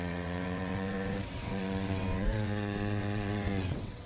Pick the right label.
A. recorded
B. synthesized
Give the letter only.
B